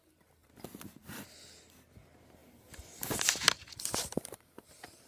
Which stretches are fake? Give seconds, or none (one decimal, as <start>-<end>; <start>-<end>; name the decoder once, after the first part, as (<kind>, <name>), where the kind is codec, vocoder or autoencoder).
2.4-3.8 (vocoder, BigVGAN v2)